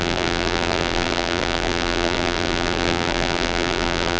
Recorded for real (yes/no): no